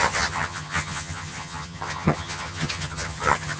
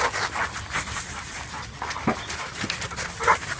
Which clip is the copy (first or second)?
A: first